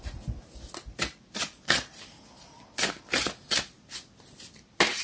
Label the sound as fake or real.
real